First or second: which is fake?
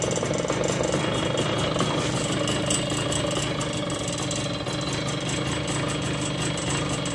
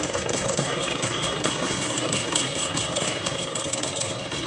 second